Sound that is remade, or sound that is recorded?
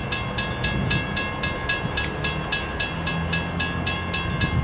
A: recorded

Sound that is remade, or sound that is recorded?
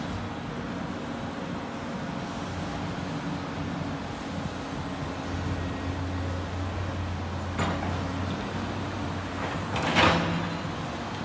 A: recorded